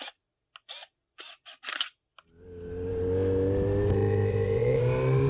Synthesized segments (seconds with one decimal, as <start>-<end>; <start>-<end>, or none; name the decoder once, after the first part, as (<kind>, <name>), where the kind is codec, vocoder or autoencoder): 3.9-4.8 (codec, ZipCodec)